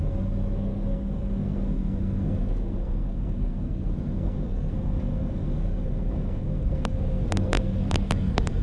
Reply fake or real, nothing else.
fake